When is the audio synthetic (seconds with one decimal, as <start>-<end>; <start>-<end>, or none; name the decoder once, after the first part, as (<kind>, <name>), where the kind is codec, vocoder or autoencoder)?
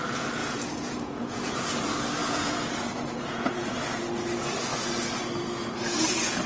0.4-1.8 (vocoder, Vocos); 2.2-4.0